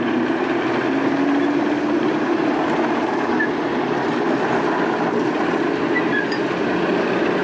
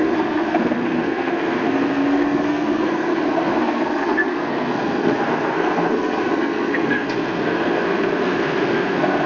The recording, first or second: first